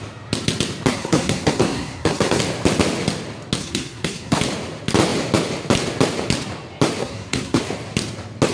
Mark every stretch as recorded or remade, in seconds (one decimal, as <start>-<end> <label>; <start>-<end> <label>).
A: 0.0-0.9 recorded; 0.9-2.4 remade; 2.4-3.6 recorded; 3.6-4.4 remade; 4.4-7.0 recorded; 7.0-7.6 remade; 7.6-8.5 recorded